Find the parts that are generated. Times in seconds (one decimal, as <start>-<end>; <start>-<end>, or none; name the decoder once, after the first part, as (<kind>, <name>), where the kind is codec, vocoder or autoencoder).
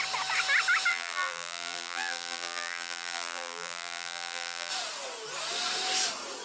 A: 0.9-4.7 (vocoder, BigVGAN v2)